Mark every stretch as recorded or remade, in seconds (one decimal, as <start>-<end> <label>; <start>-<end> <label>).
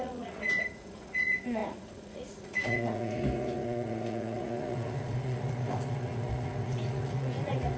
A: 0.0-7.8 remade